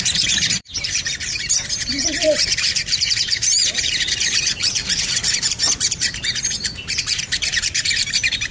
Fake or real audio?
fake